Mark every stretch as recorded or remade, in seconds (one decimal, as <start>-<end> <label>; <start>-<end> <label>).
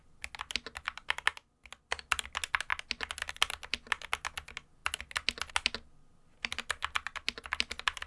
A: 0.0-8.1 recorded